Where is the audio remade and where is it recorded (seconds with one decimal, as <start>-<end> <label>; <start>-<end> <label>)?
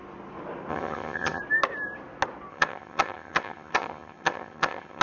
0.0-0.7 recorded; 0.7-1.4 remade; 1.4-2.5 recorded; 2.5-5.0 remade